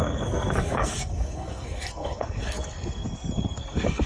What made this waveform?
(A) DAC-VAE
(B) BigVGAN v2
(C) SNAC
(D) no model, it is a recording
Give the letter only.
C